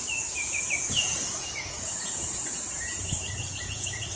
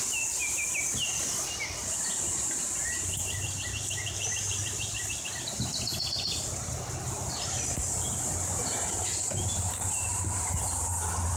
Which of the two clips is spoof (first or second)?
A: first